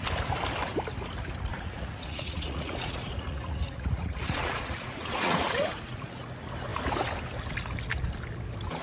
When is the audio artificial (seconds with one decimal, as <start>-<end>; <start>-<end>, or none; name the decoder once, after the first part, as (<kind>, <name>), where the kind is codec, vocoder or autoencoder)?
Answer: 1.5-6.1 (vocoder, Vocos)